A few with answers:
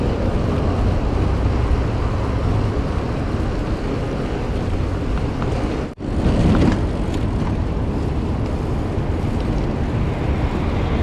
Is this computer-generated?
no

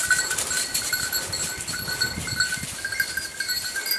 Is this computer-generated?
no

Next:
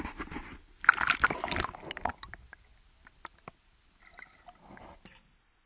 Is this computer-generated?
no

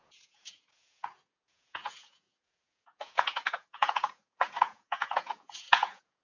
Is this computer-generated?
yes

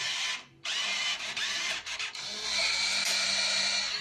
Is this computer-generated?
no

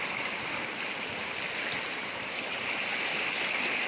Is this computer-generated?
no